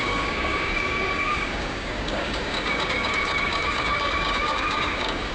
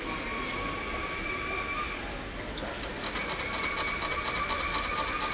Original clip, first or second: second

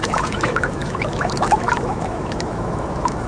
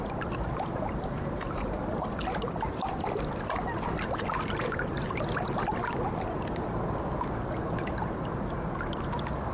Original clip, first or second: second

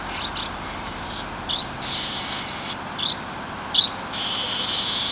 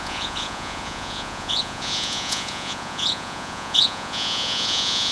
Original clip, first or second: first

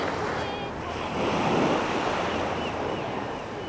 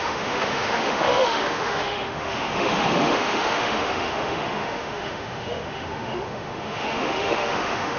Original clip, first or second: first